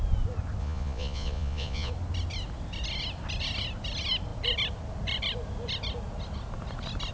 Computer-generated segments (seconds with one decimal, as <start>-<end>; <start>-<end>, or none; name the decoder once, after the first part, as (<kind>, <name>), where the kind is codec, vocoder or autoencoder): 0.6-1.9 (vocoder, Vocos)